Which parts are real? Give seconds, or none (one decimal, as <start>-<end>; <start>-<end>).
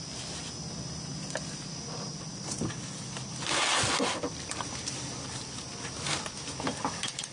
0.0-7.3